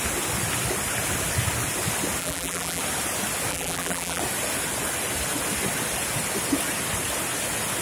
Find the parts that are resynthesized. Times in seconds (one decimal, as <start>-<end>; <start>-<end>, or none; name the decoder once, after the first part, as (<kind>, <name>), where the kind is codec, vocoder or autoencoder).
2.2-2.8 (vocoder, BigVGAN v2); 3.5-4.2

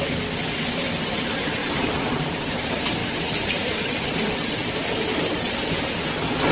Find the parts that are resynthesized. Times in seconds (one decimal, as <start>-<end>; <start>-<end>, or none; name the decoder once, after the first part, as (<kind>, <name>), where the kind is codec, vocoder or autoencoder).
1.6-2.5 (vocoder, BigVGAN v2); 3.0-6.0

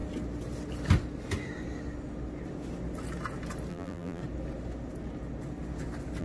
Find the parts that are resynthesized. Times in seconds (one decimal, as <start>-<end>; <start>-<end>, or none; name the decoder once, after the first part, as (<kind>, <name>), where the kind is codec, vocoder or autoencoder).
3.7-4.2 (vocoder, BigVGAN v2)

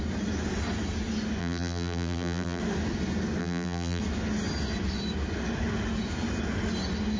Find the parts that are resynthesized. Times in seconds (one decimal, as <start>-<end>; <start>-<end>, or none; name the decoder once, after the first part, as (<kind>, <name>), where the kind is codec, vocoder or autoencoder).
1.4-2.6 (vocoder, BigVGAN v2); 3.4-4.0

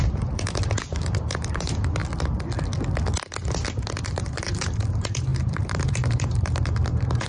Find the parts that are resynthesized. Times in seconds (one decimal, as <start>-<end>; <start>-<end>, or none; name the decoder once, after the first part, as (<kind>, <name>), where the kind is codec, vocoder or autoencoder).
0.0-2.0 (vocoder, BigVGAN v2); 4.1-7.3